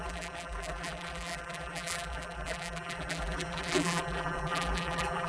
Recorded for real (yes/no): no